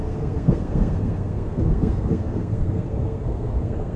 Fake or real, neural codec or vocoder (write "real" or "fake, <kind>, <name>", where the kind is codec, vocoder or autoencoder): fake, codec, SNAC